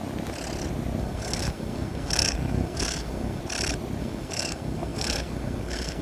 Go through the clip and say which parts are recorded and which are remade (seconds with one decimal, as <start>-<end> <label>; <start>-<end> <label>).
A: 0.0-1.0 recorded; 1.0-3.4 remade; 3.4-4.0 recorded; 4.0-6.0 remade